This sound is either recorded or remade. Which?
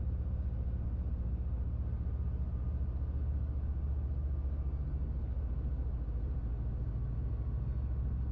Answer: recorded